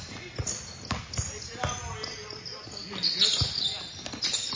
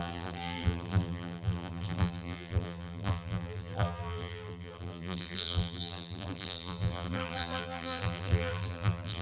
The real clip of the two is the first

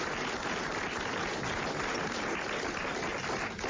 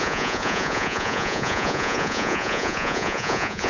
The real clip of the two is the first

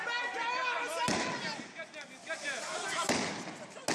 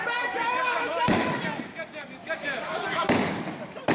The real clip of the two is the first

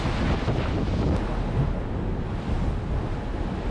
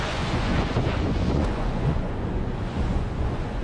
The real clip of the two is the first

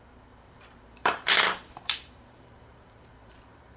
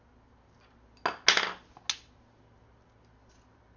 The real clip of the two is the second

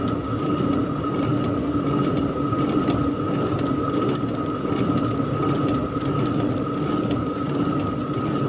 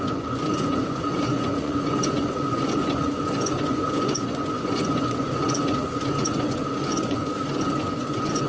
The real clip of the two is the first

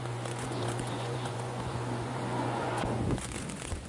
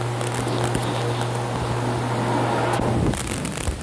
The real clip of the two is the second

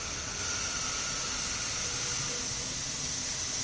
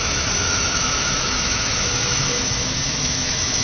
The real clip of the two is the first